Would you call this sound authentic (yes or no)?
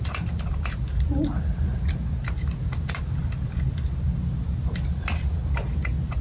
yes